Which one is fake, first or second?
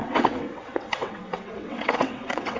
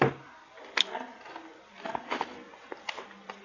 first